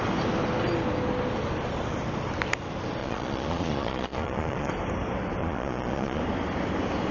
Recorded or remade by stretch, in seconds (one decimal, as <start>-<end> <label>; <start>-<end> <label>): 0.0-3.0 recorded; 3.0-4.7 remade; 4.7-5.4 recorded; 5.4-6.2 remade; 6.2-7.1 recorded